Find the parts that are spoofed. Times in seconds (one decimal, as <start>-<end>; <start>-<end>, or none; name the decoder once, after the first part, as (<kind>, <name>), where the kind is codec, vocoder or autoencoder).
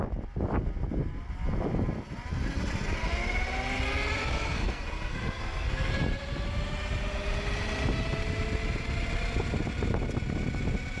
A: 4.2-5.9 (codec, SNAC)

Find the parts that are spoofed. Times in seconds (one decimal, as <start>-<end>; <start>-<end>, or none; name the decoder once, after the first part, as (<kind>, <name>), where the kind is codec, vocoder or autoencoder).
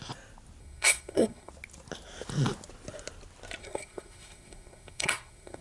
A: 0.6-1.5 (codec, SNAC); 3.6-5.6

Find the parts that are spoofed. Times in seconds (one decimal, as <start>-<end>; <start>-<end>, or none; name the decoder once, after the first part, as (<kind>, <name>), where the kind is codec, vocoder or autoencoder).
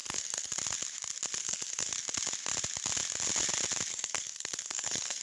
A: 0.0-0.5 (codec, SNAC); 1.3-1.9; 3.9-5.2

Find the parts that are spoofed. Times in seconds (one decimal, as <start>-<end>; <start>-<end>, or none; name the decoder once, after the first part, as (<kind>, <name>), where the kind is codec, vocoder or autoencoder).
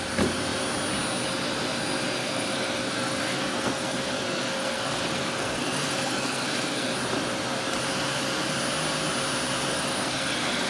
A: 2.2-6.9 (codec, SNAC); 9.7-10.7